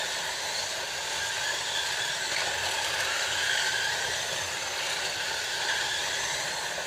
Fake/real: real